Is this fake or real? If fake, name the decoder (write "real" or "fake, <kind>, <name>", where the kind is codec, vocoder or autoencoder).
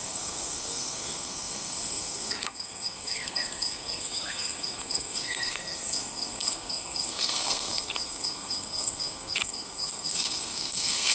fake, codec, SNAC